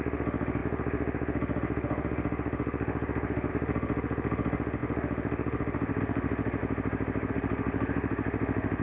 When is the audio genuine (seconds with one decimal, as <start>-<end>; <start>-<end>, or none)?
6.6-7.3